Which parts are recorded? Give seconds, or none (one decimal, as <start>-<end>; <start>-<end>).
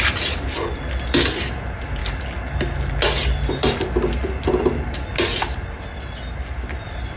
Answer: 0.0-7.2